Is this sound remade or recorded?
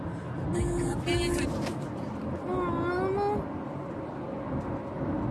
recorded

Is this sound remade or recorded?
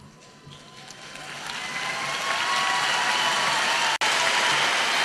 recorded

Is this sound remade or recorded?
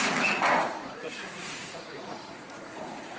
remade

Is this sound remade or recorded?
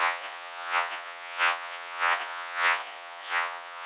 remade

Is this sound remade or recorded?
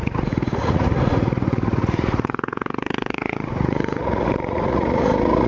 remade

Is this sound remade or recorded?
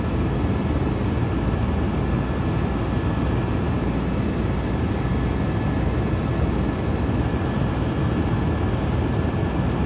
recorded